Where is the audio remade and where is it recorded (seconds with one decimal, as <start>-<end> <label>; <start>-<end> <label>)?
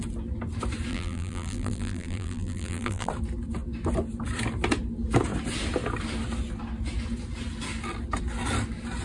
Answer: 0.0-0.9 recorded; 0.9-3.1 remade; 3.1-9.0 recorded